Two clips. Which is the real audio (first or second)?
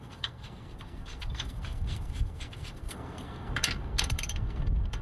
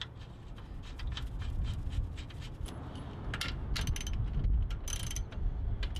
second